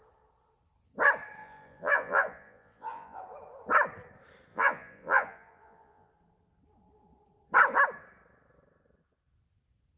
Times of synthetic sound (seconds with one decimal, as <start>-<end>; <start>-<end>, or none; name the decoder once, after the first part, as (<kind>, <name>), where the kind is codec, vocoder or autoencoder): 1.4-3.2 (vocoder, Vocos); 4.5-6.1